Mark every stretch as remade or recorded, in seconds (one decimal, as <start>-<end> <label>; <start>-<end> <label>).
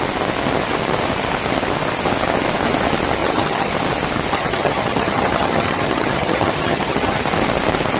0.0-3.2 recorded; 3.2-3.7 remade; 3.7-4.3 recorded; 4.3-7.2 remade; 7.2-8.0 recorded